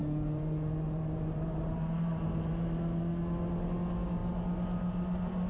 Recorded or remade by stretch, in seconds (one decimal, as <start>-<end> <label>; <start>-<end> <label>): 0.0-2.8 remade; 2.8-5.5 recorded